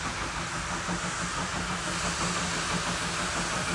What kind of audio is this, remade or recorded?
recorded